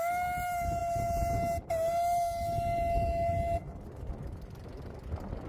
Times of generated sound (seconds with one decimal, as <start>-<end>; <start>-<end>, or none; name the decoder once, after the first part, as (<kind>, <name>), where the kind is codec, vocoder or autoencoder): none